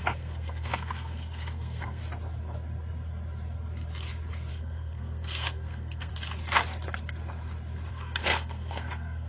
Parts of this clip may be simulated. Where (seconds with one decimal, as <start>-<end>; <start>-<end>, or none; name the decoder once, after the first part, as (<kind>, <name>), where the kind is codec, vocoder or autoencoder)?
0.0-2.0 (codec, SNAC); 4.5-6.1; 7.9-9.3